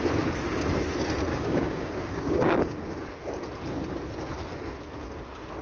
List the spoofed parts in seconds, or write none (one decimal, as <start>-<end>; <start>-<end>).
1.3-3.1